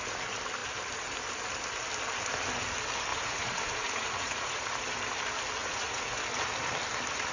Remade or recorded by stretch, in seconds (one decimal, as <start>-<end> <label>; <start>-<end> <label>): 0.0-3.1 recorded; 3.1-4.6 remade; 4.6-5.6 recorded; 5.6-6.2 remade; 6.2-7.3 recorded